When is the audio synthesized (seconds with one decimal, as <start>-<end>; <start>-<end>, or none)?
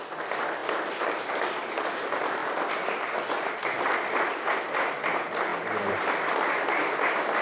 0.6-1.3; 5.5-6.5